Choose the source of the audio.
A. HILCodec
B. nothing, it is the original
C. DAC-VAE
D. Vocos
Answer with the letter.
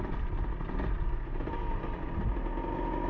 B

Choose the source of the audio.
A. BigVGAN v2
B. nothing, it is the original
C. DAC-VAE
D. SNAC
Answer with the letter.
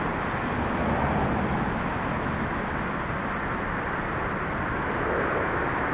B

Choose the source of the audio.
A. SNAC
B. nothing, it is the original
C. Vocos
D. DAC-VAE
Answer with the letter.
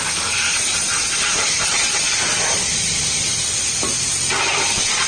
B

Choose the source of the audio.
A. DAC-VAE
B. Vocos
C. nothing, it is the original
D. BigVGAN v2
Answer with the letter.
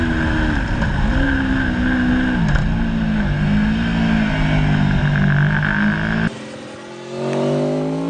C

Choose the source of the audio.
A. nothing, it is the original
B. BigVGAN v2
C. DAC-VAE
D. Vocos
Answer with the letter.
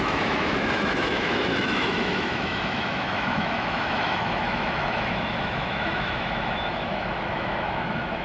C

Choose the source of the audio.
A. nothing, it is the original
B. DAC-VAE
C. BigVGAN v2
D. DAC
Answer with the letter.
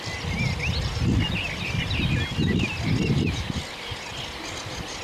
A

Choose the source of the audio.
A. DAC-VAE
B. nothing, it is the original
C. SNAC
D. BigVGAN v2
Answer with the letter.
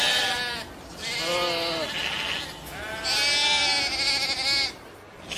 B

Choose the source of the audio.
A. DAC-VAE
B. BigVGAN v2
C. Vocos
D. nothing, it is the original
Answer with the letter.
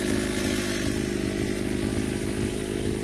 D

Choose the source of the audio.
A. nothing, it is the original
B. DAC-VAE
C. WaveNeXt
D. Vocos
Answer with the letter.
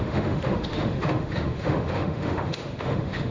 B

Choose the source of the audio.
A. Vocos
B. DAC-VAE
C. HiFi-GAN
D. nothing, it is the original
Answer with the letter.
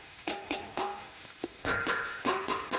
B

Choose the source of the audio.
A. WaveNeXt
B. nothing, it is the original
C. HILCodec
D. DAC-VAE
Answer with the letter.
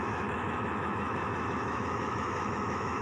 D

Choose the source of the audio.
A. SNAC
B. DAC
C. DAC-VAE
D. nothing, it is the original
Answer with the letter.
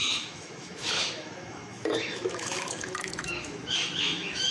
C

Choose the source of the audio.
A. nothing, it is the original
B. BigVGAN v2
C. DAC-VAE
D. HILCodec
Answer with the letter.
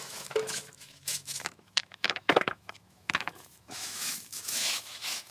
C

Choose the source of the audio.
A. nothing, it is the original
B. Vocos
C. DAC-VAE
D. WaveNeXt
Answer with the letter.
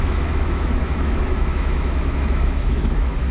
C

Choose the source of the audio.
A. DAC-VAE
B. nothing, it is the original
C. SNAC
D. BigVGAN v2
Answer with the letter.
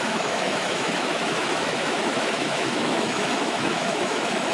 A